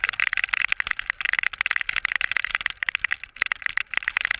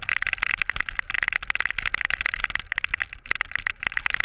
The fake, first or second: first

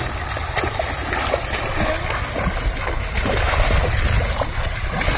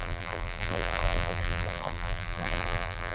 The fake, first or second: second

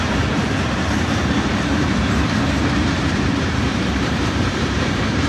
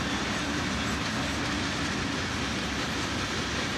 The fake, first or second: first